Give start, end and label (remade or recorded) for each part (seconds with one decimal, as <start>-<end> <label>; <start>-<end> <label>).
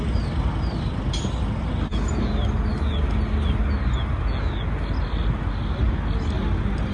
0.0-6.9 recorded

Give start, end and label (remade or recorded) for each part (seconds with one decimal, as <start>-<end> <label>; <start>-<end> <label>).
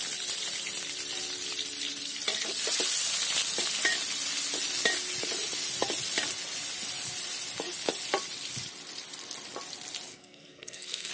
0.0-10.1 recorded; 10.1-11.1 remade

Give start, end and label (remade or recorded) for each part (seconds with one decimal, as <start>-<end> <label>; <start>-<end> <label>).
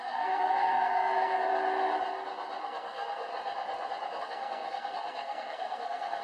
0.0-1.5 remade; 1.5-2.6 recorded; 2.6-3.3 remade; 3.3-4.2 recorded; 4.2-6.2 remade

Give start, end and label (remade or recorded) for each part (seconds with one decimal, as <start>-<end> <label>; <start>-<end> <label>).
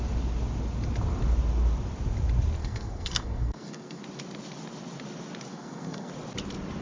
0.0-2.6 recorded; 2.6-4.0 remade; 4.0-5.5 recorded; 5.5-6.1 remade; 6.1-6.8 recorded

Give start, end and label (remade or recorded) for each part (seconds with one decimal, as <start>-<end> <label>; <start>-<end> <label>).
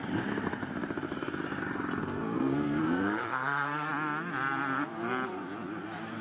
0.0-2.0 recorded; 2.0-3.9 remade; 3.9-6.2 recorded